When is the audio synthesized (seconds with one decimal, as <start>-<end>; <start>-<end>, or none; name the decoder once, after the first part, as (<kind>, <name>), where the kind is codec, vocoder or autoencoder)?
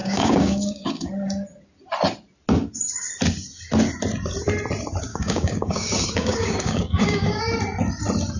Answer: 0.0-1.1 (codec, DAC); 5.1-7.4